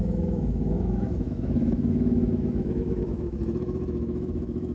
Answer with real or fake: fake